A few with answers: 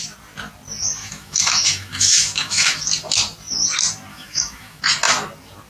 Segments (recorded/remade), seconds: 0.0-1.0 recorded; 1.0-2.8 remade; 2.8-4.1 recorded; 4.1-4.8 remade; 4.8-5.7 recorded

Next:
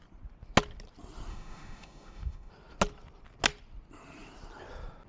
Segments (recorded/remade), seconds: 0.0-1.3 recorded; 1.3-2.5 remade; 2.5-5.1 recorded

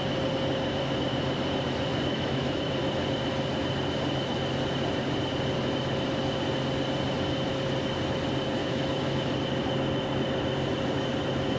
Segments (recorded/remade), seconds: 0.0-2.1 recorded; 2.1-2.7 remade; 2.7-8.6 recorded; 8.6-9.3 remade; 9.3-11.6 recorded

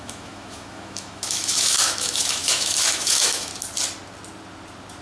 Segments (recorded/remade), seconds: 0.0-3.5 remade; 3.5-5.0 recorded

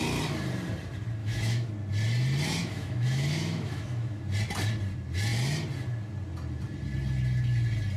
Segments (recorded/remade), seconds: 0.0-1.2 recorded; 1.2-1.7 remade; 1.7-2.6 recorded; 2.6-4.2 remade; 4.2-8.0 recorded

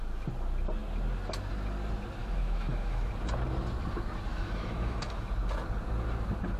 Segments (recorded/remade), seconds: 0.0-2.2 recorded; 2.2-3.1 remade; 3.1-4.3 recorded; 4.3-5.3 remade; 5.3-6.6 recorded

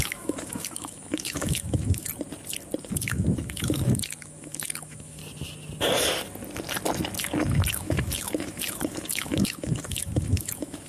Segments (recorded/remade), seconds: 0.0-2.1 remade; 2.1-2.8 recorded; 2.8-5.2 remade; 5.2-7.7 recorded; 7.7-10.9 remade